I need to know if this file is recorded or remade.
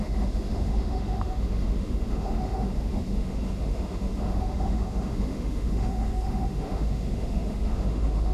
remade